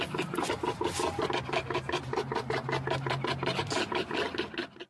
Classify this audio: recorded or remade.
recorded